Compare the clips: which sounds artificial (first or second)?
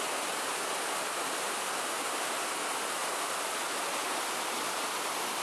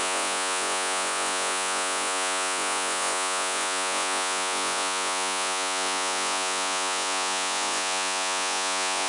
second